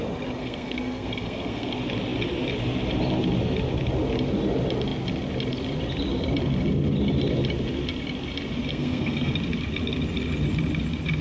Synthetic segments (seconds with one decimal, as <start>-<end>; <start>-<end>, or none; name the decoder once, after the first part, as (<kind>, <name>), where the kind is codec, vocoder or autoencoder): 0.4-1.7 (codec, SNAC); 8.7-9.3